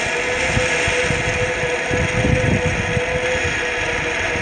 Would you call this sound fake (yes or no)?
no